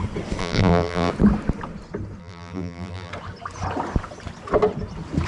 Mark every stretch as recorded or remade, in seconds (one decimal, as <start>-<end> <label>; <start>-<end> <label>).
0.0-0.4 recorded; 0.4-1.1 remade; 1.1-2.2 recorded; 2.2-3.1 remade; 3.1-5.3 recorded